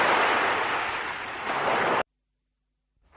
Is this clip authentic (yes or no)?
yes